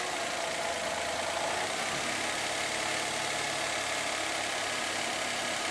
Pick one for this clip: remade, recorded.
recorded